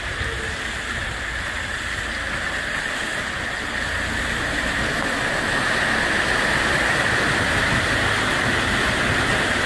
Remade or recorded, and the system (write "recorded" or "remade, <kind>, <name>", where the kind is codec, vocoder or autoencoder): recorded